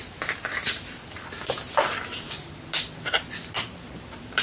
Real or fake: real